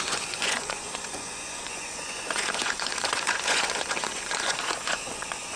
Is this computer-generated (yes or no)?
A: yes